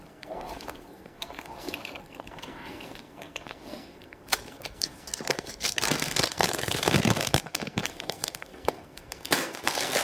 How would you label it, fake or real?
fake